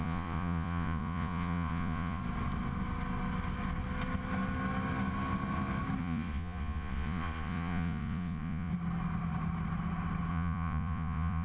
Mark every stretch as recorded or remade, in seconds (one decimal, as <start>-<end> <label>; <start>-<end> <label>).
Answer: 0.0-2.2 remade; 2.2-6.0 recorded; 6.0-8.7 remade; 8.7-10.3 recorded; 10.3-11.4 remade